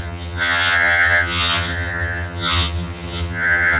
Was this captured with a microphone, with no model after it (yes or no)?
no